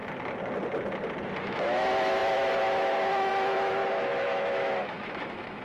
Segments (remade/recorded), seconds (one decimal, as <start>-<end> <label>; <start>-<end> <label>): 0.0-1.4 recorded; 1.4-5.6 remade